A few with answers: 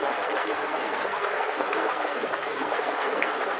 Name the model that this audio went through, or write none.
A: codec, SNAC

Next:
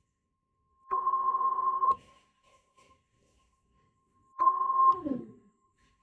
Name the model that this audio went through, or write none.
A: codec, SNAC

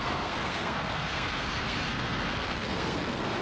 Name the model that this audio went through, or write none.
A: codec, SNAC